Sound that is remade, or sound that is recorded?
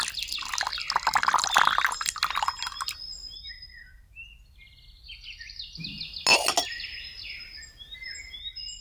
recorded